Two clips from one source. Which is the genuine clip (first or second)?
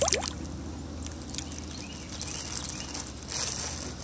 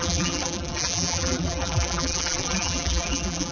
first